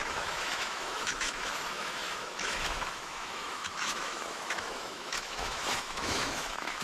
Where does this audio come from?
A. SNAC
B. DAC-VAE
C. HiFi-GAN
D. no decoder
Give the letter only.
B